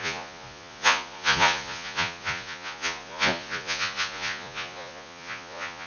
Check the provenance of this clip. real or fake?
fake